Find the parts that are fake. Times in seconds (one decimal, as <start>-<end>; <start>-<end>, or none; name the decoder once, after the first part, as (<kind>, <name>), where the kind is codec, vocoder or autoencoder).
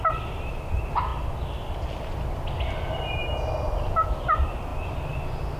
none